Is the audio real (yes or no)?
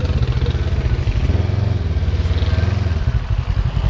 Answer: yes